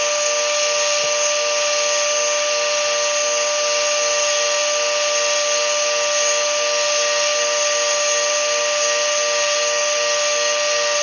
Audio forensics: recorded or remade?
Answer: recorded